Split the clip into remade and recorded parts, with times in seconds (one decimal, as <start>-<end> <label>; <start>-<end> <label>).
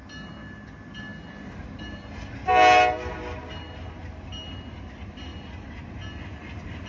0.0-6.9 recorded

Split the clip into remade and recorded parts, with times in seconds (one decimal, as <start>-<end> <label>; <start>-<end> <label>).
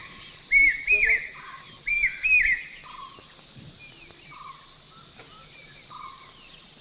0.0-6.8 recorded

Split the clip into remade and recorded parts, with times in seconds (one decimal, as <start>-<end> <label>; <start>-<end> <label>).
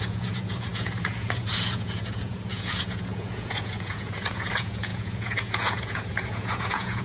0.0-7.0 remade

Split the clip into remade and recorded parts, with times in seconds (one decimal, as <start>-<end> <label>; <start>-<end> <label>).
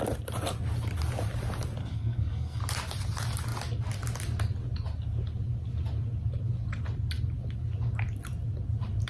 0.0-1.8 recorded; 1.8-2.6 remade; 2.6-9.1 recorded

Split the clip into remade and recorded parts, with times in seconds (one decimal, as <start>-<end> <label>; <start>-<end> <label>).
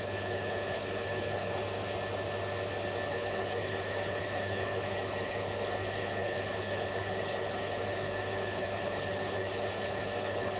0.0-1.6 remade; 1.6-3.1 recorded; 3.1-10.6 remade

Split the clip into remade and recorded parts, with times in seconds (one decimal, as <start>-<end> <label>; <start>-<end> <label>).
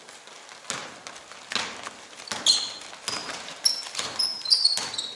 0.0-3.2 recorded; 3.2-3.8 remade; 3.8-4.3 recorded; 4.3-5.2 remade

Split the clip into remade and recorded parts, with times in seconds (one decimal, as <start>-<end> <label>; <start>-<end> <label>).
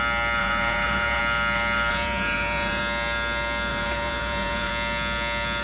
0.0-0.4 recorded; 0.4-1.2 remade; 1.2-1.9 recorded; 1.9-2.8 remade; 2.8-3.7 recorded; 3.7-4.7 remade; 4.7-5.6 recorded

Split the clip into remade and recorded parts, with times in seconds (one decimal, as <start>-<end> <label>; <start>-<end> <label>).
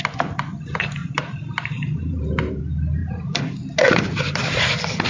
0.0-1.0 recorded; 1.0-2.6 remade; 2.6-3.0 recorded; 3.0-5.1 remade